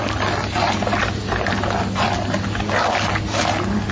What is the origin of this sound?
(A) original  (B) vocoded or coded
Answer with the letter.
A